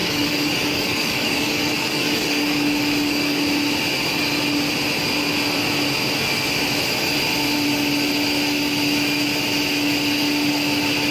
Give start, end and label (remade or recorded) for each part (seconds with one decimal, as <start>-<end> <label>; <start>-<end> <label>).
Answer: 0.0-3.4 remade; 3.4-11.1 recorded

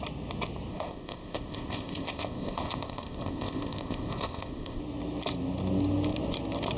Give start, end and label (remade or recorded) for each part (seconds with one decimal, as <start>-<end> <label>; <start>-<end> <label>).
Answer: 0.0-0.7 recorded; 0.7-4.8 remade; 4.8-6.8 recorded

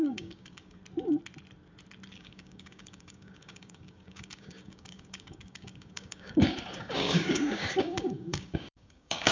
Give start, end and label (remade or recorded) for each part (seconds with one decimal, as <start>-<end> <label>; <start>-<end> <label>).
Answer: 0.0-0.8 remade; 0.8-2.1 recorded; 2.1-9.3 remade

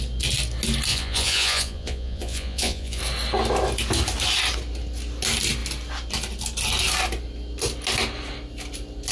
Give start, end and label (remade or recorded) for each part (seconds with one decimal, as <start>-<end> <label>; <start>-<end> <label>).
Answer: 0.0-0.9 recorded; 0.9-3.0 remade; 3.0-9.1 recorded

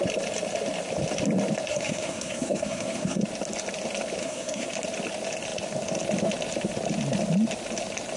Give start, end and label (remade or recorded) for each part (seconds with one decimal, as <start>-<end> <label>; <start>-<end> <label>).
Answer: 0.0-1.7 recorded; 1.7-3.2 remade; 3.2-4.2 recorded; 4.2-4.7 remade; 4.7-8.2 recorded

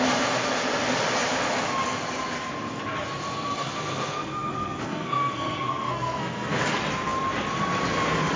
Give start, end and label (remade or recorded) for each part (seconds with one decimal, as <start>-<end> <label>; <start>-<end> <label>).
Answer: 0.0-3.6 recorded; 3.6-6.6 remade; 6.6-8.4 recorded

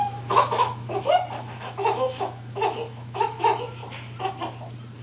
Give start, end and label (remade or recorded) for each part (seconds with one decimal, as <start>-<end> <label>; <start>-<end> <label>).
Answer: 0.0-3.8 remade; 3.8-5.0 recorded